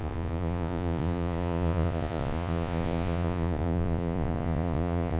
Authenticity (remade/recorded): remade